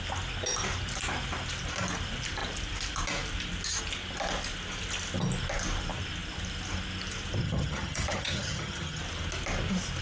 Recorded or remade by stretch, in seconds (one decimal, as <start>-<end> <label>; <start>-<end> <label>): 0.0-7.4 recorded; 7.4-9.0 remade; 9.0-10.0 recorded